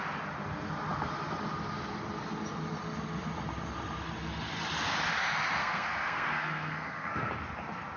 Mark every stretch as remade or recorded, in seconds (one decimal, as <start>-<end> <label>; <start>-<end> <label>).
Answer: 0.0-5.6 recorded; 5.6-7.3 remade; 7.3-8.0 recorded